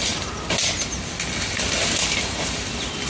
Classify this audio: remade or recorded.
recorded